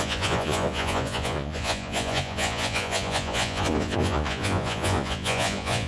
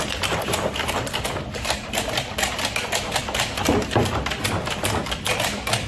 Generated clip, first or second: first